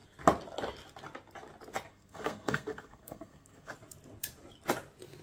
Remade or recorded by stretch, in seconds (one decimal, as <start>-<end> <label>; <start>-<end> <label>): 0.0-1.9 recorded; 1.9-3.7 remade; 3.7-5.2 recorded

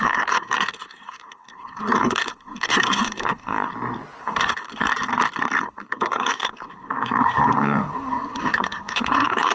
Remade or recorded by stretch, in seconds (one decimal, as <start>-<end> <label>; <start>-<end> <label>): 0.0-3.7 remade; 3.7-4.2 recorded; 4.2-4.9 remade; 4.9-5.6 recorded; 5.6-9.5 remade

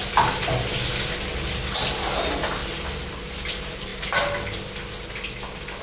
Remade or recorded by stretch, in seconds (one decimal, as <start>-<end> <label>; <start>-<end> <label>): 0.0-5.8 recorded

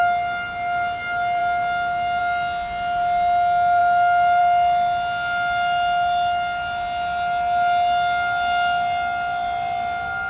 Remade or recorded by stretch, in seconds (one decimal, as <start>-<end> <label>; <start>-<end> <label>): 0.0-10.3 recorded

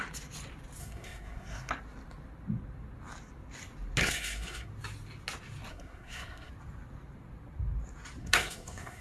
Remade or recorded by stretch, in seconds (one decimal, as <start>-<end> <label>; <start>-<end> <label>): 0.0-0.8 recorded; 0.8-1.7 remade; 1.7-4.0 recorded; 4.0-4.7 remade; 4.7-5.7 recorded; 5.7-6.5 remade; 6.5-8.2 recorded; 8.2-9.0 remade

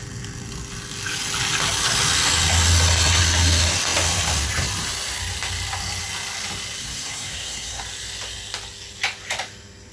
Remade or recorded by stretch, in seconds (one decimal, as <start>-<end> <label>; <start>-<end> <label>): 0.0-6.8 recorded; 6.8-7.8 remade; 7.8-9.9 recorded